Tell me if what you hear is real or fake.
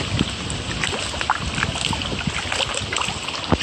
real